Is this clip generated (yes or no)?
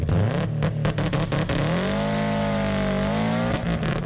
no